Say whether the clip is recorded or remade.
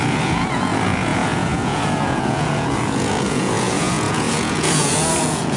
remade